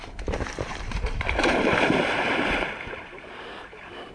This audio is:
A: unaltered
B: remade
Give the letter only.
B